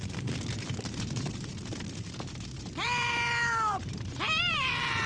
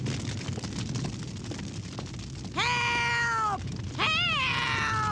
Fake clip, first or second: first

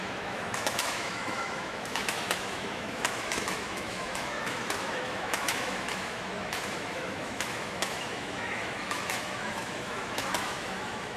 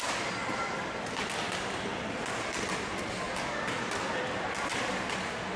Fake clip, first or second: first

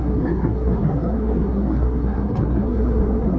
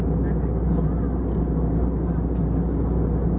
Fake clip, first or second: first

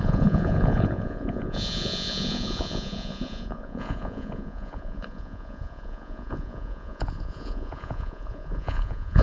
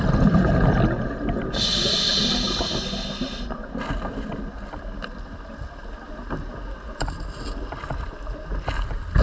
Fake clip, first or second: first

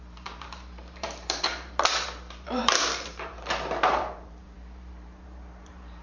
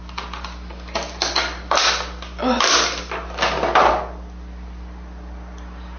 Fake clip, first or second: first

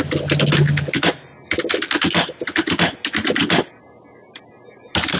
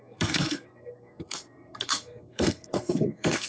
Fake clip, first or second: second